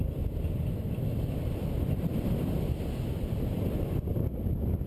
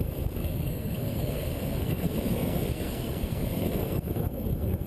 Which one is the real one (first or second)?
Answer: first